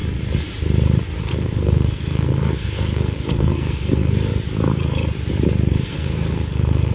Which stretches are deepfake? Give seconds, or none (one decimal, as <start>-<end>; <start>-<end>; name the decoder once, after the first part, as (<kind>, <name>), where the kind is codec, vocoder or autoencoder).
1.2-4.3 (codec, SNAC); 5.7-6.9